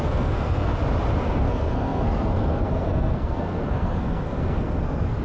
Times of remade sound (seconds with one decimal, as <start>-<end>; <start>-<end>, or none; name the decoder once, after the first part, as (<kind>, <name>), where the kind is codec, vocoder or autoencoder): 0.0-0.7 (codec, SNAC); 1.2-5.2